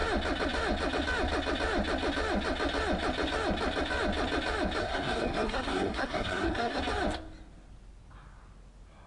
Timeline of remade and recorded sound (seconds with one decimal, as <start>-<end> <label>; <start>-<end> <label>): 0.0-4.8 recorded; 4.8-6.8 remade; 6.8-9.1 recorded